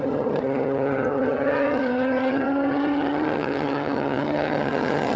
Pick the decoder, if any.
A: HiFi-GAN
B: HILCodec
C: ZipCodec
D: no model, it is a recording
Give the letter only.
A